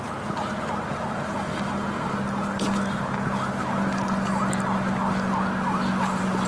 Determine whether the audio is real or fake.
real